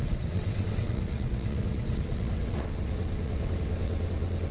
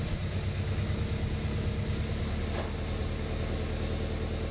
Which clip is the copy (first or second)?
first